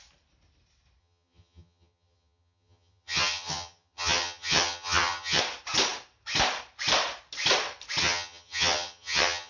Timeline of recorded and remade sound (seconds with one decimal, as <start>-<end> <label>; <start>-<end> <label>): 0.0-1.0 recorded; 1.0-5.4 remade; 5.4-8.0 recorded; 8.0-9.5 remade